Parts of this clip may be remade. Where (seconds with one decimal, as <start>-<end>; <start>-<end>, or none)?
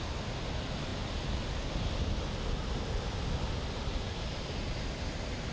none